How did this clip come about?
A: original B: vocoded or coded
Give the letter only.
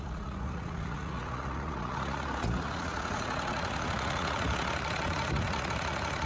B